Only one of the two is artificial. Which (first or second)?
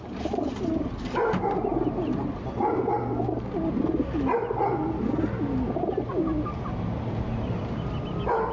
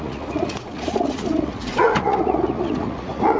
second